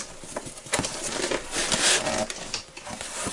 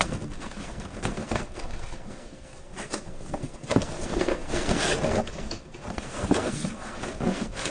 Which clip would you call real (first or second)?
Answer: first